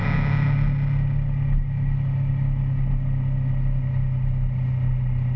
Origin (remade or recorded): recorded